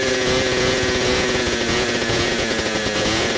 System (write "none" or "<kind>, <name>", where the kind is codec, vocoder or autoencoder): vocoder, Vocos